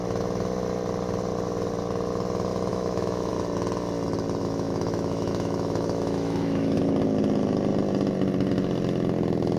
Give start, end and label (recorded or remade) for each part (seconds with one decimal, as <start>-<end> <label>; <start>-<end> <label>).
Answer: 0.0-2.7 recorded; 2.7-3.3 remade; 3.3-4.4 recorded; 4.4-6.8 remade; 6.8-9.6 recorded